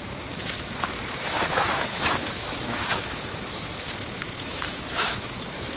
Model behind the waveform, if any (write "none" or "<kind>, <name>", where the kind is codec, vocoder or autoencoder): autoencoder, DAC-VAE